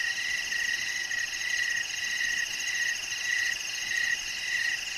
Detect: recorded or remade remade